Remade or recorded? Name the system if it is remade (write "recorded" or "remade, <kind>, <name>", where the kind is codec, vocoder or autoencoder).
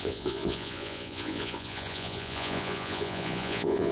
remade, vocoder, Vocos